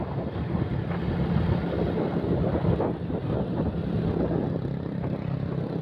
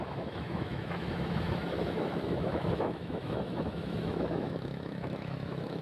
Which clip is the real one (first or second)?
first